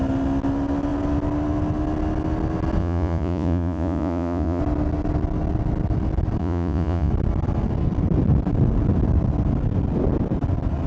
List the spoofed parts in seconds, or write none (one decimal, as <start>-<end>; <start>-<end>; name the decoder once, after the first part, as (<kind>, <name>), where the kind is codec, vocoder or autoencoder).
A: 2.8-4.6 (vocoder, Vocos); 6.4-7.1